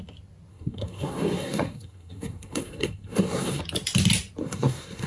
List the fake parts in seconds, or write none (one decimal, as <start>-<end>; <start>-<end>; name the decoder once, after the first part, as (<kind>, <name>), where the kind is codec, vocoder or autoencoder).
0.5-3.6 (codec, SNAC); 4.4-5.1